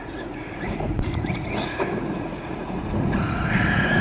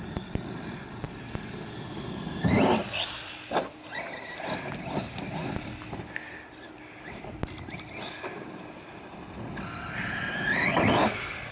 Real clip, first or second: second